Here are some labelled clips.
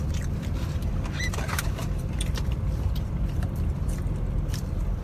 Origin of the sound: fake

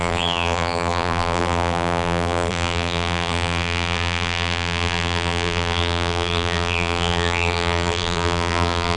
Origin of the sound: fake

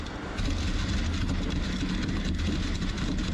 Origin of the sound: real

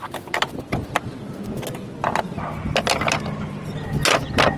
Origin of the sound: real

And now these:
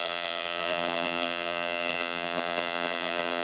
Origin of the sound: fake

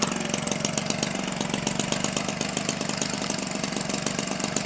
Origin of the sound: real